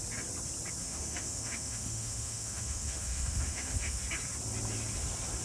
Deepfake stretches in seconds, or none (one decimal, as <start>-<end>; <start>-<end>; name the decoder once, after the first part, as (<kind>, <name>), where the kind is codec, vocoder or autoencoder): 0.8-4.0 (autoencoder, DAC-VAE)